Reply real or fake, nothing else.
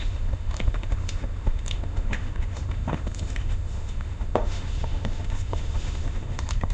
fake